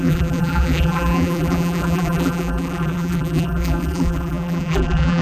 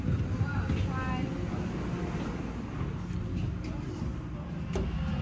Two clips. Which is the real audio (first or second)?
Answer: second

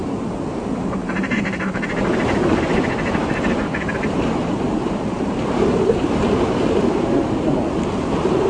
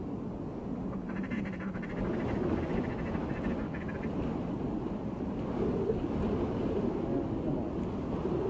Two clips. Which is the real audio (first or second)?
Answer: second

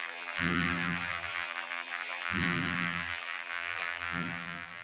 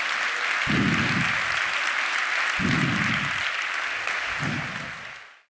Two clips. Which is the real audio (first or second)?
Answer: second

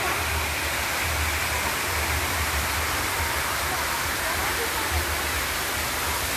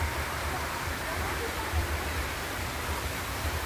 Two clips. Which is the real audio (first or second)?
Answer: first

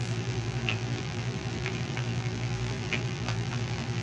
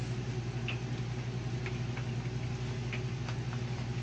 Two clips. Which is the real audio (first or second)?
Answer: second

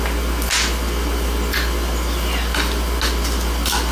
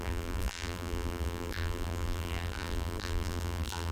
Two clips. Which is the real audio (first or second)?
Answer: first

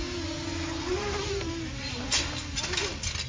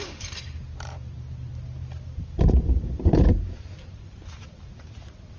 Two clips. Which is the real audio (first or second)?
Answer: first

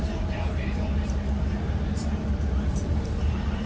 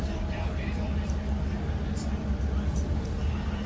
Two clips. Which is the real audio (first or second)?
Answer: second